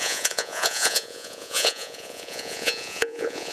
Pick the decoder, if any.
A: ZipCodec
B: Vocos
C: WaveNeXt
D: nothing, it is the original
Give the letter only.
B